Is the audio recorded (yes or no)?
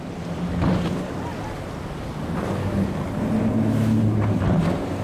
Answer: yes